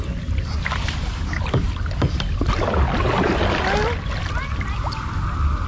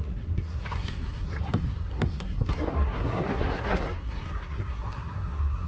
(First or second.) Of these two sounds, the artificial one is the second